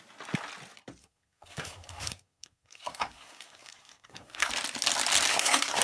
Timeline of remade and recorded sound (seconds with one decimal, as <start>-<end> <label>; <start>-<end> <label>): 0.0-1.0 recorded; 1.0-4.5 remade; 4.5-5.3 recorded; 5.3-5.8 remade